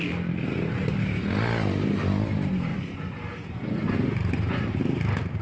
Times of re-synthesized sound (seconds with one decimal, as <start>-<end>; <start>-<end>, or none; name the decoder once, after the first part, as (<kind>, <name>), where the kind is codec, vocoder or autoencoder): 0.0-1.2 (vocoder, BigVGAN v2); 2.7-4.8